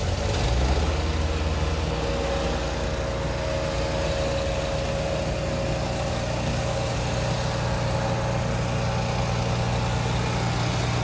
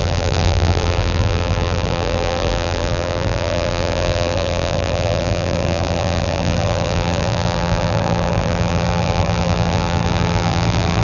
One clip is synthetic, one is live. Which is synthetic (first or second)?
second